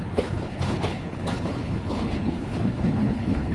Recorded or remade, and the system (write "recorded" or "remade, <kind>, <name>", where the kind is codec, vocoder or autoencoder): remade, codec, HILCodec